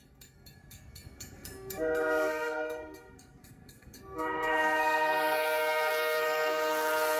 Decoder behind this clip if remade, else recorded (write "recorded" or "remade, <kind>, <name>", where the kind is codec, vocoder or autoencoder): remade, codec, SNAC